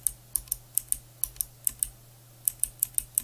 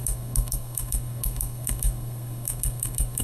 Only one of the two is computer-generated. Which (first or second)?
second